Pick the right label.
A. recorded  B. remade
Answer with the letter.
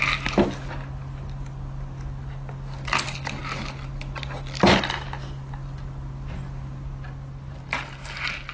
A